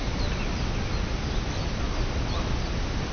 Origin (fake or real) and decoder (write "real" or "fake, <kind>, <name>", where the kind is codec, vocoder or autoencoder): real